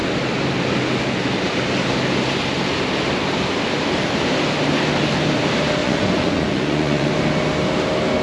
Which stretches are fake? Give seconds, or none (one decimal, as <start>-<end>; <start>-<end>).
5.8-7.1